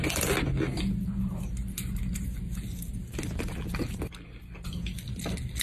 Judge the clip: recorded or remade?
recorded